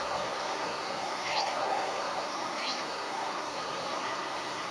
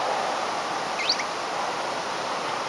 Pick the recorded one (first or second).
second